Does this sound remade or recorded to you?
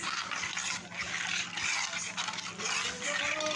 recorded